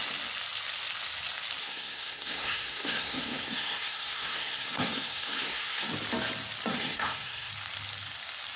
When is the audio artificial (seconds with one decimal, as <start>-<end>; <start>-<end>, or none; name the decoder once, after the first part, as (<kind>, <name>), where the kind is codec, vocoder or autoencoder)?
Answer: 1.6-5.9 (codec, SNAC); 6.7-7.5